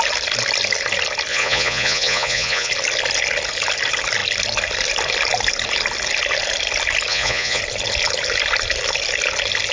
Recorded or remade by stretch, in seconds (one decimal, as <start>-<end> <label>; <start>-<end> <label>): 0.0-1.3 recorded; 1.3-2.7 remade; 2.7-7.1 recorded; 7.1-7.6 remade; 7.6-9.7 recorded